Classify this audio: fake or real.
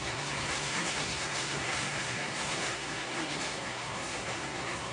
fake